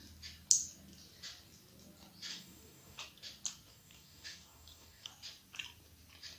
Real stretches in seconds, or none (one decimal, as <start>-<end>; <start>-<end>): 0.0-2.3; 3.0-3.7; 5.1-6.4